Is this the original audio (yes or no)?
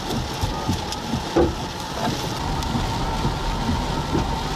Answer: yes